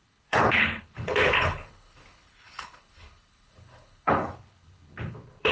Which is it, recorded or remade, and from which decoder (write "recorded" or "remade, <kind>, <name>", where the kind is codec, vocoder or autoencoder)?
remade, codec, HILCodec